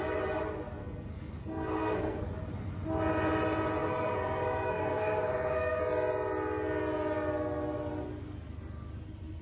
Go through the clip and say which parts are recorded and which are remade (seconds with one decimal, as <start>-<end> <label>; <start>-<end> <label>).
0.0-0.8 recorded; 0.8-2.3 remade; 2.3-3.8 recorded; 3.8-5.8 remade; 5.8-9.4 recorded

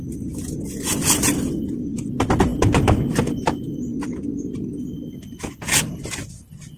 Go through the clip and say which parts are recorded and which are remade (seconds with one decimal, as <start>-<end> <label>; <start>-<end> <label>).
0.0-6.8 recorded